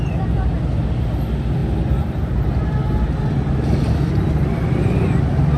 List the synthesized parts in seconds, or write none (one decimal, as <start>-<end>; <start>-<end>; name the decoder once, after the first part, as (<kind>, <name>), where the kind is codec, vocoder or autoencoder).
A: none